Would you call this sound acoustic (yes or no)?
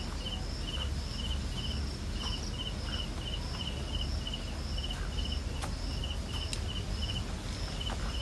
yes